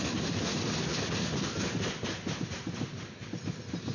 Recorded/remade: recorded